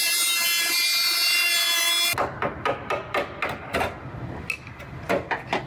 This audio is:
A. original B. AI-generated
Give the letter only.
A